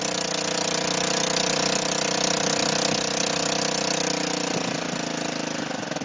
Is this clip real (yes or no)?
yes